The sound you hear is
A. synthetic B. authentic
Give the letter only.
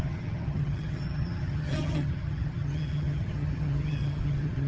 A